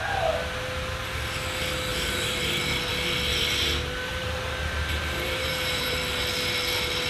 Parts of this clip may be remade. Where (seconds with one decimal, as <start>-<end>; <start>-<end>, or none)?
1.9-2.4; 4.1-6.0